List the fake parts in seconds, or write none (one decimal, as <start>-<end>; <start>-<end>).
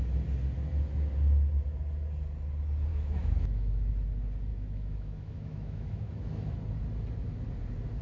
2.9-3.9; 4.5-6.6